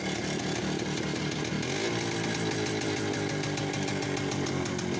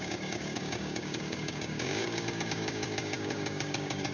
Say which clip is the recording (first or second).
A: first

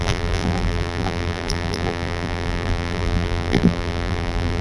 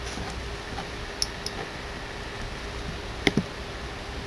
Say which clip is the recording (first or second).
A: second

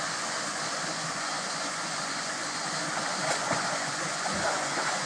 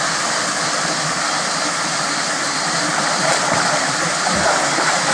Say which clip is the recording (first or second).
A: second